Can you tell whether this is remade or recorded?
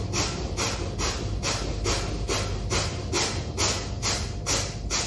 recorded